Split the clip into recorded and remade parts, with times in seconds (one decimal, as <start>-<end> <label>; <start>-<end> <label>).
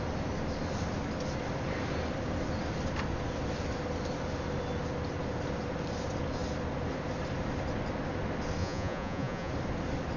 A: 0.0-8.6 recorded; 8.6-9.5 remade; 9.5-10.2 recorded